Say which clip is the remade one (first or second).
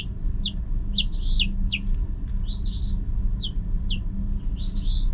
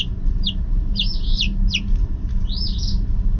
second